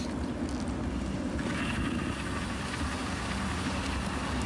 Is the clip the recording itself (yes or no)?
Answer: yes